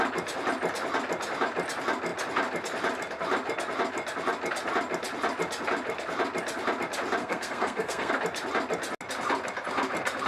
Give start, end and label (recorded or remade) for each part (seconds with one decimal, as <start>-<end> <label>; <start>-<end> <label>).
0.0-7.2 recorded; 7.2-8.1 remade; 8.1-10.3 recorded